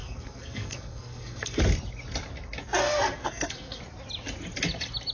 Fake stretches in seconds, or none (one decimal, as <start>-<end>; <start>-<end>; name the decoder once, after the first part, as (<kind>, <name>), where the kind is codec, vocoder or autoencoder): 0.0-1.6 (codec, SNAC); 2.8-3.8